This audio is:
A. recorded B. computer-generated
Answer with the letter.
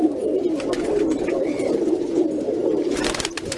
B